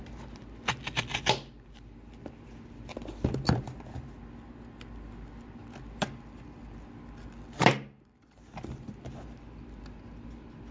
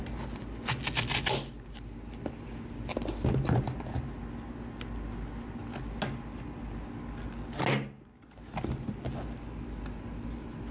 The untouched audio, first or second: second